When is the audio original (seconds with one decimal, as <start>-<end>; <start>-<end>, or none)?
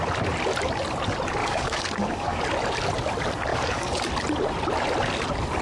0.0-1.4; 2.4-3.5; 4.1-5.6